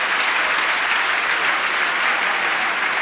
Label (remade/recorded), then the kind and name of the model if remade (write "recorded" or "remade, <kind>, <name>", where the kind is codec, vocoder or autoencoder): recorded